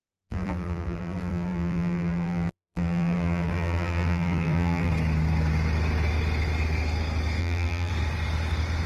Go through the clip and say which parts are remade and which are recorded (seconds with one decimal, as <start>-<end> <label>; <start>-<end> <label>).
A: 0.0-4.9 remade; 4.9-7.4 recorded; 7.4-7.9 remade; 7.9-8.9 recorded

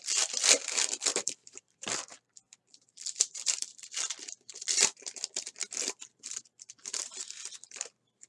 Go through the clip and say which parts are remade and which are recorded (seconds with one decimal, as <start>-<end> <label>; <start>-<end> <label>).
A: 0.0-8.3 remade

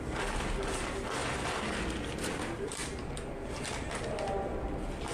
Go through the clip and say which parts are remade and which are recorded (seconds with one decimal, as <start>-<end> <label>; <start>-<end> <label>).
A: 0.0-1.2 recorded; 1.2-1.8 remade; 1.8-2.8 recorded; 2.8-3.5 remade; 3.5-5.1 recorded

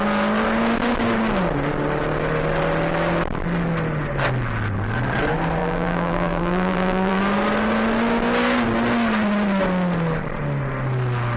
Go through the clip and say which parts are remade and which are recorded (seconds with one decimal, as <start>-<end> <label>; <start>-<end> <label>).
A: 0.0-5.6 recorded; 5.6-7.2 remade; 7.2-11.4 recorded

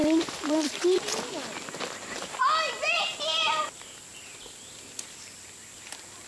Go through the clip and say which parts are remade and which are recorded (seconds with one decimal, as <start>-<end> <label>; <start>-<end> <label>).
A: 0.0-1.3 remade; 1.3-4.1 recorded; 4.1-5.3 remade; 5.3-6.3 recorded

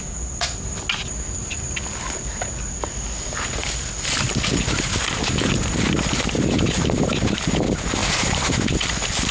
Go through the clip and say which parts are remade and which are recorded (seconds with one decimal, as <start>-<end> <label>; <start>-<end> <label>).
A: 0.0-8.0 recorded; 8.0-8.8 remade; 8.8-9.3 recorded

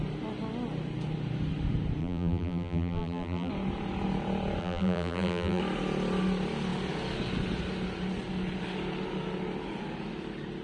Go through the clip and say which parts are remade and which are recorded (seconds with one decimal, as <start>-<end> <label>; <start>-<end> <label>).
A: 0.0-2.0 recorded; 2.0-3.5 remade; 3.5-4.6 recorded; 4.6-5.6 remade; 5.6-10.6 recorded